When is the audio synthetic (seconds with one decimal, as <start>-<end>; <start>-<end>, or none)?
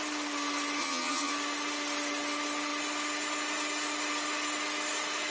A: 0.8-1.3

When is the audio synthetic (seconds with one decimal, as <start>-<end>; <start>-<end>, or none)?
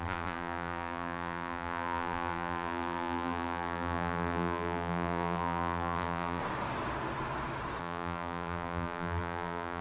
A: 0.0-6.4; 7.8-9.8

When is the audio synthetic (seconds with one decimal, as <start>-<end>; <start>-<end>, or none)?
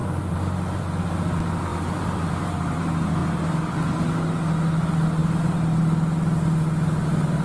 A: 0.0-0.8; 1.7-2.5; 3.2-3.8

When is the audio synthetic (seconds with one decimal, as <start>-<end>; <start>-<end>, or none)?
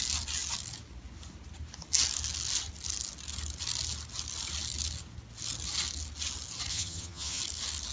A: 6.7-7.4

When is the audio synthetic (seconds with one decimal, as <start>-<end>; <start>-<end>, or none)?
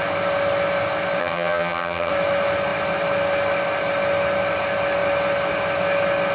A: 1.2-2.1